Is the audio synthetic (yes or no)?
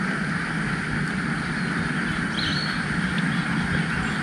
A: no